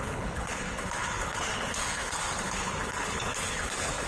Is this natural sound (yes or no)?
no